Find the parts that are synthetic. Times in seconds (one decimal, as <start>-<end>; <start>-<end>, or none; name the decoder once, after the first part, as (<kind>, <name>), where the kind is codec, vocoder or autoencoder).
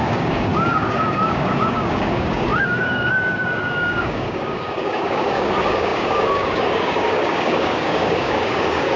0.0-9.0 (codec, DAC)